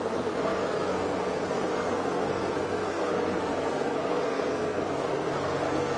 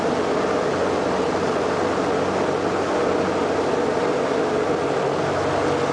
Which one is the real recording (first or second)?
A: second